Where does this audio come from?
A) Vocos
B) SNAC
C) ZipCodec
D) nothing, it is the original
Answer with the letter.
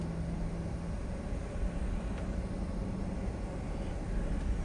D